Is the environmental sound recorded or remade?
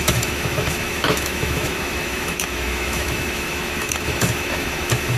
remade